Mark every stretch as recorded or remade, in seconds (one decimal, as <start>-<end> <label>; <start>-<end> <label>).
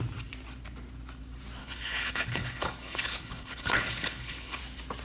0.0-1.6 recorded; 1.6-4.6 remade; 4.6-5.0 recorded